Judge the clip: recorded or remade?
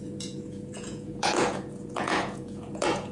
remade